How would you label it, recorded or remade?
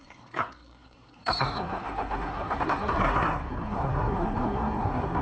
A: remade